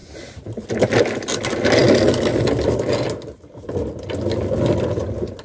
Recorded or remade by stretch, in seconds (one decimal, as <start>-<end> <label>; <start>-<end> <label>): 0.0-5.4 recorded